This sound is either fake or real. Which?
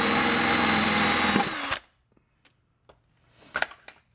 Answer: real